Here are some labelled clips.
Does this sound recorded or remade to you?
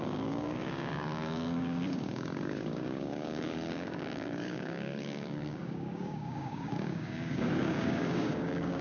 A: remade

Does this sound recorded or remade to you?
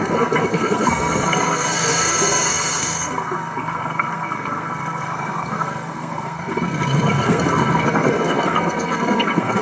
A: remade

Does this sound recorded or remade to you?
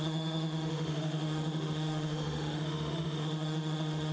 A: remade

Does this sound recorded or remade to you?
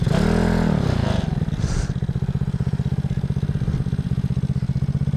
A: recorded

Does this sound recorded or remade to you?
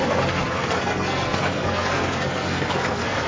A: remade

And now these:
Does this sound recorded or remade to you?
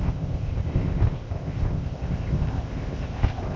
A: remade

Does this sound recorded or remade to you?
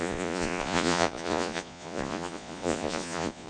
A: remade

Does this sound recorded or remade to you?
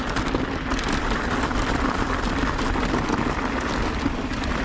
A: recorded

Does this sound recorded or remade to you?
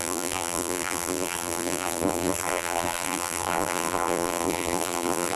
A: remade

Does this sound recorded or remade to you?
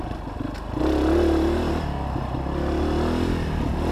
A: recorded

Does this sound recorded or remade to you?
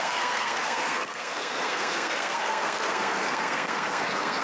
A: remade